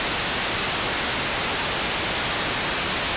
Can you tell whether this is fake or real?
real